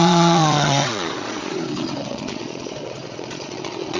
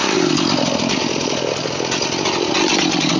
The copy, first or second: first